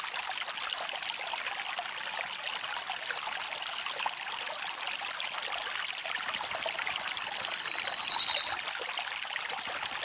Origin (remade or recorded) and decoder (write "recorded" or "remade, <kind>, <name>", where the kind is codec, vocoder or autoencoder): recorded